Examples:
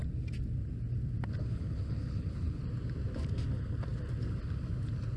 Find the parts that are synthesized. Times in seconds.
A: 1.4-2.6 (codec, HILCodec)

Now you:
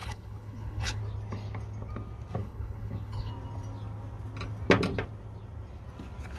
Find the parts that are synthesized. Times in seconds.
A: 0.0-1.0 (codec, HILCodec); 2.4-3.3